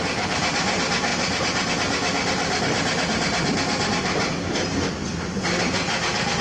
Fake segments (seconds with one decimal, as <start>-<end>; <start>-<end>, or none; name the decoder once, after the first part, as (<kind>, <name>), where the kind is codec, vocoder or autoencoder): none